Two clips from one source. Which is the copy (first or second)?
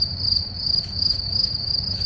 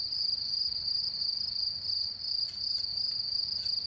first